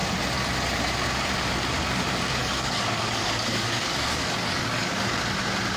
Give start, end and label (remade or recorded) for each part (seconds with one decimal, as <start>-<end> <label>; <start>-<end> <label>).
0.0-2.4 recorded; 2.4-5.2 remade; 5.2-5.8 recorded